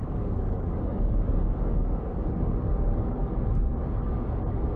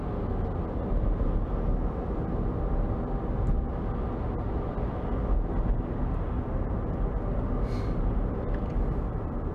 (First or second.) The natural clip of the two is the second